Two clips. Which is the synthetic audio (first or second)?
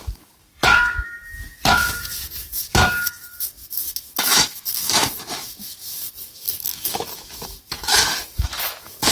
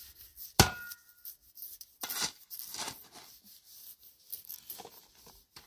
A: first